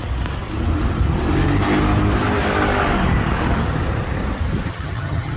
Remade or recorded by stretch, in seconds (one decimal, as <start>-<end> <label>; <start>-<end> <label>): 0.0-4.7 recorded; 4.7-5.4 remade